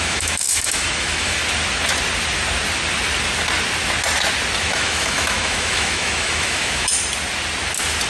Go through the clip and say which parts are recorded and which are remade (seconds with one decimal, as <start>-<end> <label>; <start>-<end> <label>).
0.0-1.4 remade; 1.4-4.6 recorded; 4.6-6.9 remade; 6.9-8.1 recorded